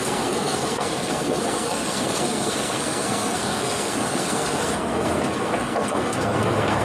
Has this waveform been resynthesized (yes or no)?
yes